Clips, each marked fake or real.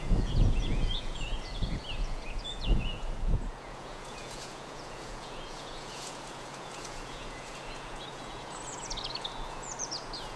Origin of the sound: fake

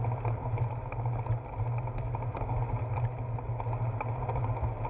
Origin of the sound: real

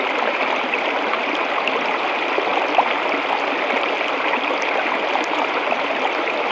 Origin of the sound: real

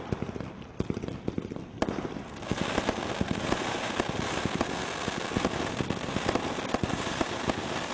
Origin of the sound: real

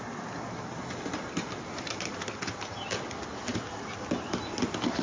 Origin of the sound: real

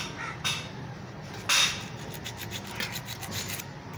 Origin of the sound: real